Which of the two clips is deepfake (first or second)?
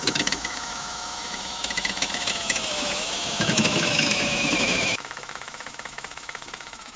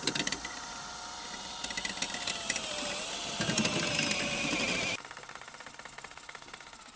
first